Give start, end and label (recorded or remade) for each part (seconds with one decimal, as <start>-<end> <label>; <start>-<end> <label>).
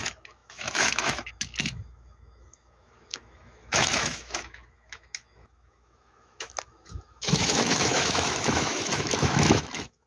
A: 0.0-10.1 remade